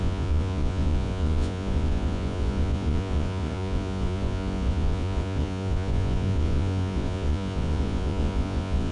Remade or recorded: remade